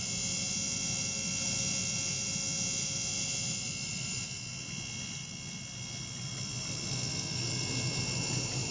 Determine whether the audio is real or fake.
real